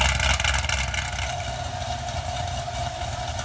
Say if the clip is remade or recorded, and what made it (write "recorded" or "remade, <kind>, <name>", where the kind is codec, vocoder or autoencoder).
recorded